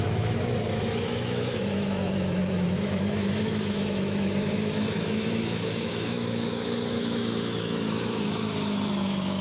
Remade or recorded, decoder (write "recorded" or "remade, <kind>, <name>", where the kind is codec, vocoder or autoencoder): remade, autoencoder, DAC-VAE